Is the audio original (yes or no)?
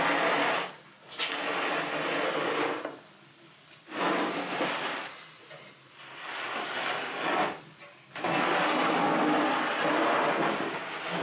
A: yes